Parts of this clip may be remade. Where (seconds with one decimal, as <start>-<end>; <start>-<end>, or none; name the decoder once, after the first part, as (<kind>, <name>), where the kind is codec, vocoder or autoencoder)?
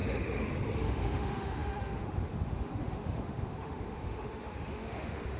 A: 0.8-5.4 (autoencoder, DAC-VAE)